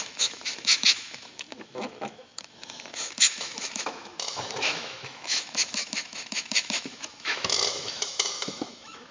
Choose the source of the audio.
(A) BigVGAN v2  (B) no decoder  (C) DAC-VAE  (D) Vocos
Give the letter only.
C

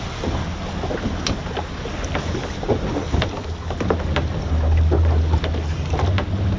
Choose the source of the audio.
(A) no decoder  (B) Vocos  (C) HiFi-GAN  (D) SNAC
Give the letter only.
A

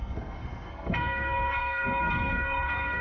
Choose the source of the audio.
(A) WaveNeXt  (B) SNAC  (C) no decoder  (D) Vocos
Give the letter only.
B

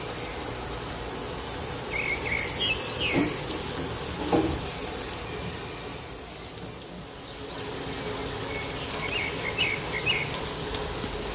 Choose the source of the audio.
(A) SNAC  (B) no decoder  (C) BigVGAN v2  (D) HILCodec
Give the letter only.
B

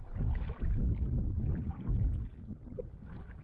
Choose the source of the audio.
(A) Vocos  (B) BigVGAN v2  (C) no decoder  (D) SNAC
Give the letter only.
C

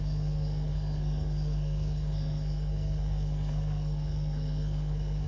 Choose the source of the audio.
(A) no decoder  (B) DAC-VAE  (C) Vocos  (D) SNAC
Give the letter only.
D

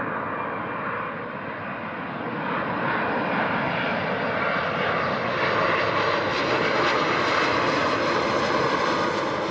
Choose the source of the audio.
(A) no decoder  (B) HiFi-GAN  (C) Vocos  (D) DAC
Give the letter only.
A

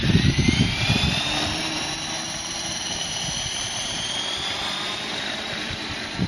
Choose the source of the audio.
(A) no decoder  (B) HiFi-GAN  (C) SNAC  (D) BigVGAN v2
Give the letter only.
D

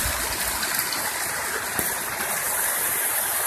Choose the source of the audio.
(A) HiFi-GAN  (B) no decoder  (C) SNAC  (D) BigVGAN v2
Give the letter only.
B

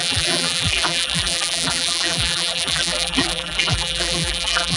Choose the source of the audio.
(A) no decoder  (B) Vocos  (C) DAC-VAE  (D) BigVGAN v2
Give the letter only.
D